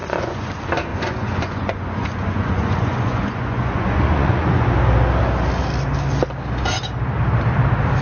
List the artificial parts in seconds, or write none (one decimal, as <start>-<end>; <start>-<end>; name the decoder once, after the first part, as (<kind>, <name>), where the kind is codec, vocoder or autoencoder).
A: 0.0-0.5 (vocoder, Vocos); 0.9-4.7